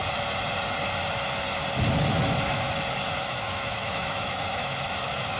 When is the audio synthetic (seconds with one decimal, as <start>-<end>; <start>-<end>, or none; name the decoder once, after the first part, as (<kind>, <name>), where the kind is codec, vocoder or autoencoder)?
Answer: 3.2-5.4 (autoencoder, DAC-VAE)